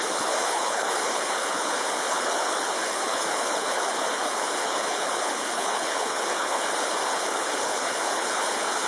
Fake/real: fake